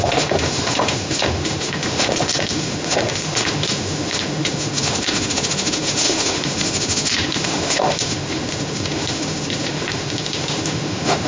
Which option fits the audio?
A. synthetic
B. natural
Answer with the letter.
A